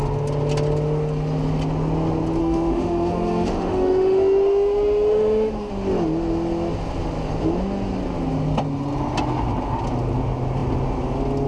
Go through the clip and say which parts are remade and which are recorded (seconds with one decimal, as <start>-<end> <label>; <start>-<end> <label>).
0.0-2.4 recorded; 2.4-5.7 remade; 5.7-11.5 recorded